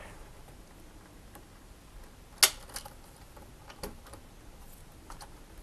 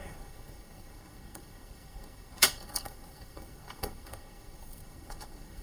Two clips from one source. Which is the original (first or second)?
first